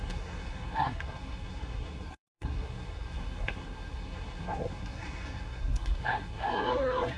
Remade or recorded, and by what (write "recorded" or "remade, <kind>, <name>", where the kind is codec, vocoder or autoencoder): remade, codec, SNAC